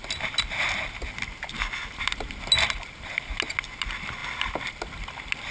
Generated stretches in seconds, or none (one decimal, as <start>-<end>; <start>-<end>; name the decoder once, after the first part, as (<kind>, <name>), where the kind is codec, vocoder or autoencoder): none